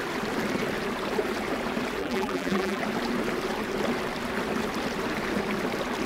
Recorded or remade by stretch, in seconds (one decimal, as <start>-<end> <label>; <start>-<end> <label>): 0.0-2.0 recorded; 2.0-2.8 remade; 2.8-6.1 recorded